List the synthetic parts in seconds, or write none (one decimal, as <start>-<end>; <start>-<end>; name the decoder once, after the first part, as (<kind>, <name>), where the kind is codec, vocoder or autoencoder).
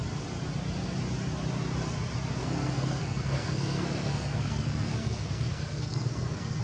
2.4-6.6 (codec, SNAC)